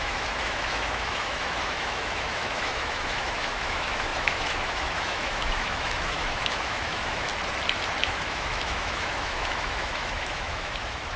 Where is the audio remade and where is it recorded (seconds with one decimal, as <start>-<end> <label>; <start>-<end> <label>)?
0.0-7.3 remade; 7.3-8.0 recorded; 8.0-11.2 remade